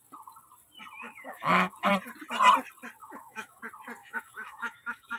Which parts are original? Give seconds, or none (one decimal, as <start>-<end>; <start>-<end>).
0.0-1.0; 1.9-3.0; 3.6-4.0